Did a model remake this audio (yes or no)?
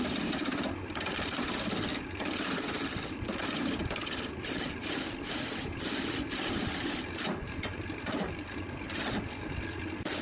no